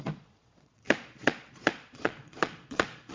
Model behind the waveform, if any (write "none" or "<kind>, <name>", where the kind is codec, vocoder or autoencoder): vocoder, Vocos